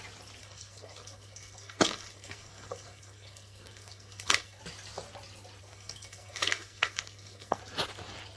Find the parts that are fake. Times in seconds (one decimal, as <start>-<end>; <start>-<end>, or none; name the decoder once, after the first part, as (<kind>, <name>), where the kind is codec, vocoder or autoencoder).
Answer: 0.4-4.6 (codec, SNAC); 5.6-7.6